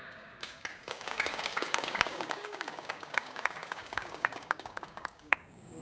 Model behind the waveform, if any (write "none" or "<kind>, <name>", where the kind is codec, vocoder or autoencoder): codec, DAC